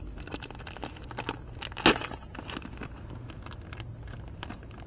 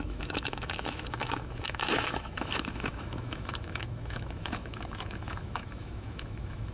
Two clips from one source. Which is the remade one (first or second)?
second